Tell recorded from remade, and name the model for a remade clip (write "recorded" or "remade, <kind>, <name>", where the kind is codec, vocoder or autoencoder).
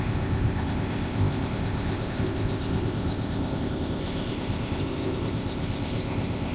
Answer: remade, codec, ZipCodec